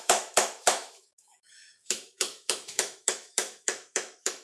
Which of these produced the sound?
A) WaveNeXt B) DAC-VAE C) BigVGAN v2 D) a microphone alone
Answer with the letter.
B